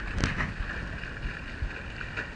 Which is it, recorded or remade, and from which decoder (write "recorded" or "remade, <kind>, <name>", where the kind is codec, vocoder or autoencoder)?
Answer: recorded